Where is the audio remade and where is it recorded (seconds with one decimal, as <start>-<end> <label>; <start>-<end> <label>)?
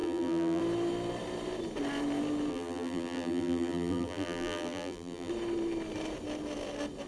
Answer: 0.0-0.6 remade; 0.6-2.5 recorded; 2.5-5.3 remade; 5.3-7.1 recorded